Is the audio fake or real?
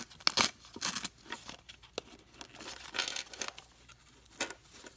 real